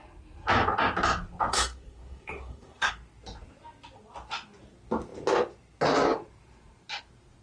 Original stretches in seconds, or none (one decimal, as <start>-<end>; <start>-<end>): 0.0-1.5; 2.9-7.4